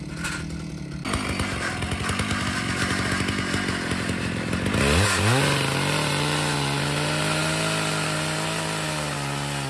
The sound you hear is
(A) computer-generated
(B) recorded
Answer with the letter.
B